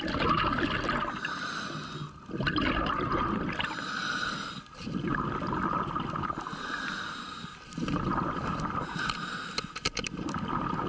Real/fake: real